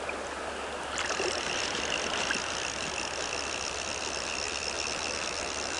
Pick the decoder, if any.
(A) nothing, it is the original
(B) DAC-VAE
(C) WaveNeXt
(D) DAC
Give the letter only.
A